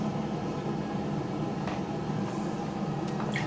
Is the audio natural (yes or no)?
yes